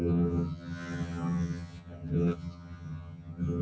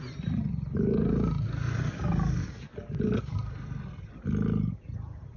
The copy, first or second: first